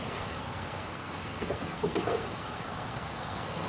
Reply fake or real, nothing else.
fake